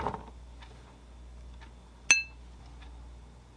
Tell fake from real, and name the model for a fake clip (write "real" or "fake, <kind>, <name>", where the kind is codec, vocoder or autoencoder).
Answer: real